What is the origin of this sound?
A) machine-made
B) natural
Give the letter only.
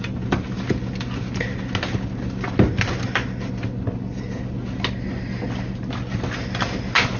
B